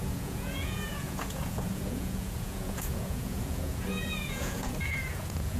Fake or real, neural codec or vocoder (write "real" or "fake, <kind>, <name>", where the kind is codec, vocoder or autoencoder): fake, vocoder, Vocos